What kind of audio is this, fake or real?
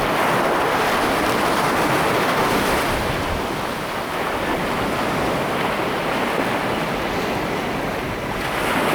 real